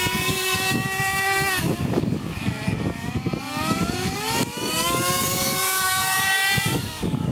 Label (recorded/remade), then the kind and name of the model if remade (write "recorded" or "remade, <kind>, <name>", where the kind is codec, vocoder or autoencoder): remade, codec, DAC